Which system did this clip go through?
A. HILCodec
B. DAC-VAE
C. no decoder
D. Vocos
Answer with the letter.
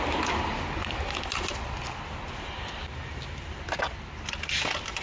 C